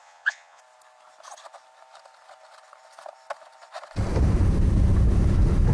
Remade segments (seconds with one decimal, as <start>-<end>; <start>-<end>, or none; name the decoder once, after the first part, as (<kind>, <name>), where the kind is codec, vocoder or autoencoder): 0.0-0.6 (vocoder, Vocos)